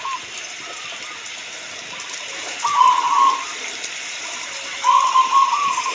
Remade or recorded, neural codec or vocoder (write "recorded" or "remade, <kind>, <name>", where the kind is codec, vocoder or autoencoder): recorded